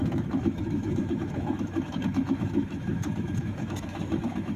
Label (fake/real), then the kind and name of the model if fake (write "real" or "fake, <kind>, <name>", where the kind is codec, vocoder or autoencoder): fake, autoencoder, DAC-VAE